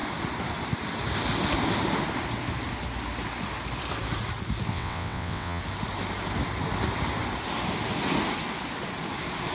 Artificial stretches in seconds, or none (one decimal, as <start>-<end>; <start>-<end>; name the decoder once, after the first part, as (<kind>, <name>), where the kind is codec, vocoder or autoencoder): 4.7-5.6 (vocoder, WaveNeXt)